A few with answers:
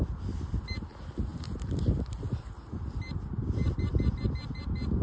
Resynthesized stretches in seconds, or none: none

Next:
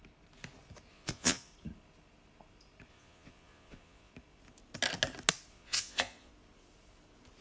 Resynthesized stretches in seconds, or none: 0.9-1.5 (vocoder, Vocos); 2.9-4.1; 5.5-6.3

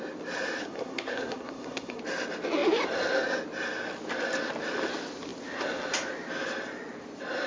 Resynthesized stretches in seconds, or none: 0.6-2.0 (codec, SNAC)